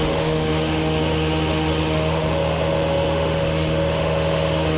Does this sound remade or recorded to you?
remade